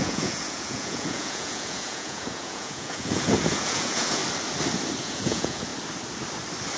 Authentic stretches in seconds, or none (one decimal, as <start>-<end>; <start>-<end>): 4.2-5.0; 5.7-6.8